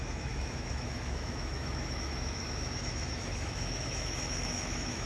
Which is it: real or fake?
fake